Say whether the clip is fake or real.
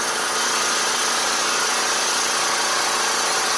real